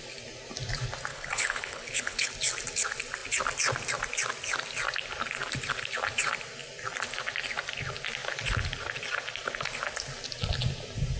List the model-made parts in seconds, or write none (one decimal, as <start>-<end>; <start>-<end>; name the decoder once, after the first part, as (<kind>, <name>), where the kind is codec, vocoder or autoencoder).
1.1-2.3 (codec, HILCodec)